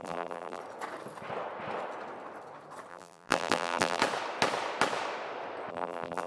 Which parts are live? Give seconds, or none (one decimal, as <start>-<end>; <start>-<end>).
0.6-2.9; 4.0-5.7